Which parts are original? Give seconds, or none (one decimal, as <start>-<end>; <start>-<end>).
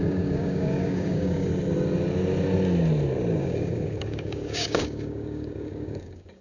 1.5-3.4